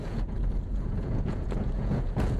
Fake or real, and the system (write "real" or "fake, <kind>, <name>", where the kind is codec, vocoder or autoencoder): fake, vocoder, Vocos